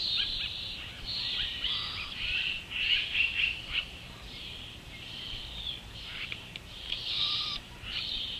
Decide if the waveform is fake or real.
fake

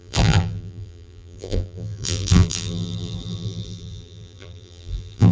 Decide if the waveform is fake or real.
fake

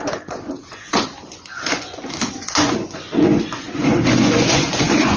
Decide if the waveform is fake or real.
fake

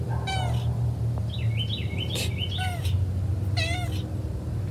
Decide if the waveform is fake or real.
real